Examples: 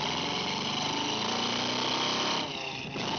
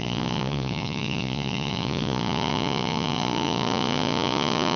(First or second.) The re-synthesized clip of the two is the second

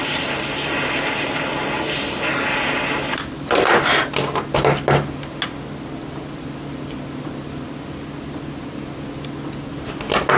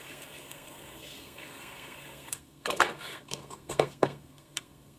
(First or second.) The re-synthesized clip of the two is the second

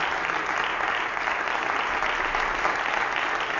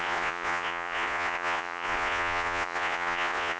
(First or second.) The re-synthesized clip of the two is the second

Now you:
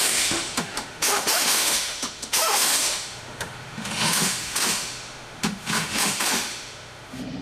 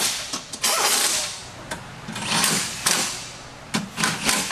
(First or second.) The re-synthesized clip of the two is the first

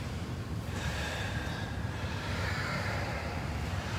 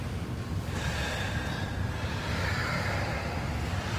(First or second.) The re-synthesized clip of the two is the first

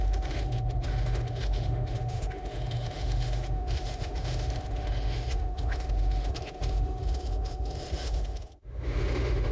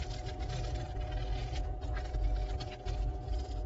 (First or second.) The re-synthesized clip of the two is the first